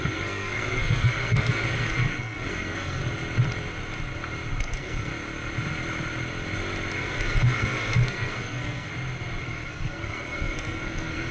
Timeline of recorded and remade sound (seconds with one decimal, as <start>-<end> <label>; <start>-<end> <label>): 0.0-3.0 remade; 3.0-4.6 recorded; 4.6-5.1 remade; 5.1-7.0 recorded; 7.0-8.9 remade; 8.9-9.4 recorded; 9.4-11.3 remade